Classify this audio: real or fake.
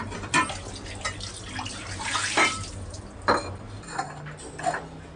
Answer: real